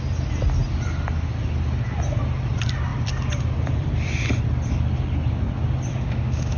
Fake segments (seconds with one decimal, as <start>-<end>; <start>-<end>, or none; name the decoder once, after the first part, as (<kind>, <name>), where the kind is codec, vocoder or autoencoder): 5.9-6.6 (autoencoder, DAC-VAE)